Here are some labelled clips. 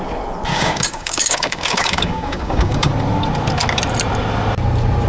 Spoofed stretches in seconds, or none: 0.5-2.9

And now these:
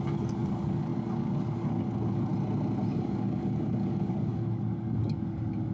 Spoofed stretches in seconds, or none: 0.0-2.3; 3.0-5.7

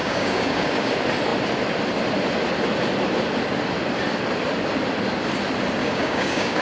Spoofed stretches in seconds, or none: 0.0-0.9; 5.8-6.6

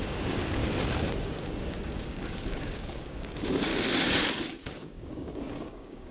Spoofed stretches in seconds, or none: 0.0-0.6; 1.2-3.7; 4.3-6.1

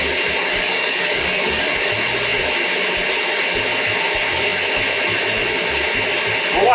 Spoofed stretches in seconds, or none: 0.4-1.9

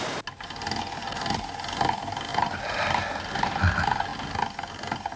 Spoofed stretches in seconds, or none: none

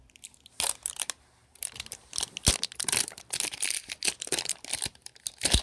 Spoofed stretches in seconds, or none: none